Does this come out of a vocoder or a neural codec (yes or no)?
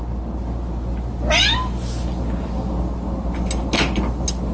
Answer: no